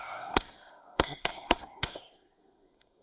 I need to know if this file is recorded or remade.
remade